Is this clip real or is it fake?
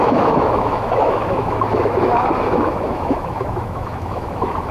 fake